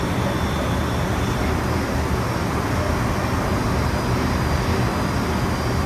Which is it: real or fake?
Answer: real